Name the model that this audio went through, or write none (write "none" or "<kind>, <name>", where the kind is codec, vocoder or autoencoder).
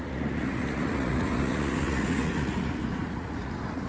vocoder, Vocos